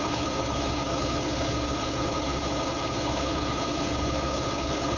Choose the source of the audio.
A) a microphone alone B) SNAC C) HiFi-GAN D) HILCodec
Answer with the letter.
D